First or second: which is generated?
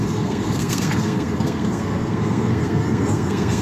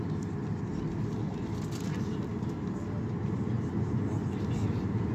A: first